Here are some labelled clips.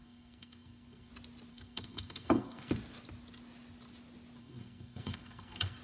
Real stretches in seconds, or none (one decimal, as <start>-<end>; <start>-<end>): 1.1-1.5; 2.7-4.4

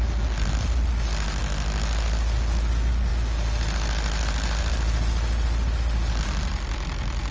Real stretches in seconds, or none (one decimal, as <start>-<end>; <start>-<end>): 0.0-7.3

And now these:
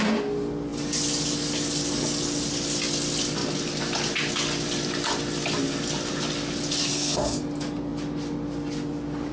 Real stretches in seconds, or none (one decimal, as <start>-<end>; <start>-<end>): 0.0-6.9; 7.4-9.3

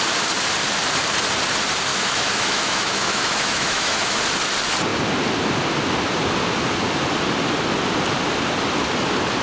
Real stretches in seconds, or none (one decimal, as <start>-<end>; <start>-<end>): 0.0-1.9; 4.2-9.4

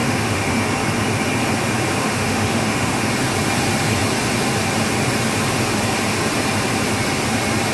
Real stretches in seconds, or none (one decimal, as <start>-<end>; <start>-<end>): 0.5-2.0; 3.1-7.7

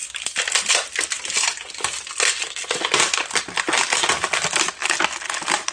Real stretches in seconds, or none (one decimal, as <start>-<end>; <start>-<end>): 0.0-5.7

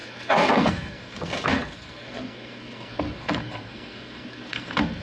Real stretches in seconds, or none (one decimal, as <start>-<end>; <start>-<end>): none